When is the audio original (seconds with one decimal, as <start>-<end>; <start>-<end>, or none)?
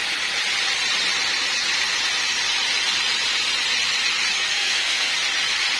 0.0-4.3; 5.1-5.8